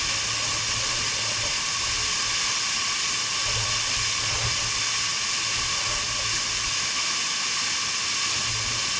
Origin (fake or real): real